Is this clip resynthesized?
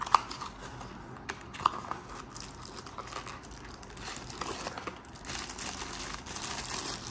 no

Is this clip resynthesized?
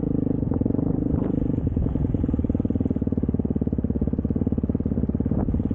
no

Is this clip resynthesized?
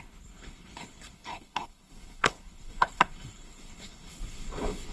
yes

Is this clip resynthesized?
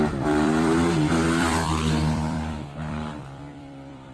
yes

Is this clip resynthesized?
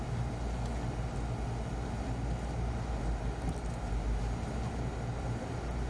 no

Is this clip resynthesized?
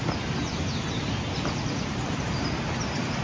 no